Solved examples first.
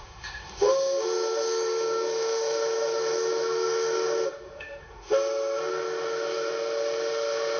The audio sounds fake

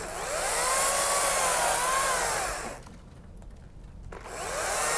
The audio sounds real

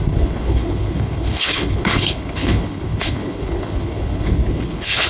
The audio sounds fake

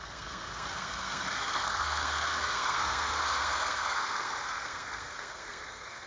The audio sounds fake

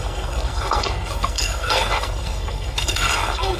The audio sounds fake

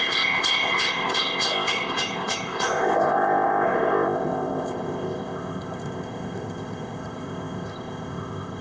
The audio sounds fake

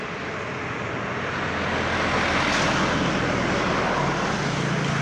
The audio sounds real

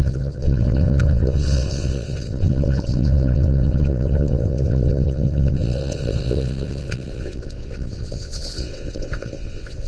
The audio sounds fake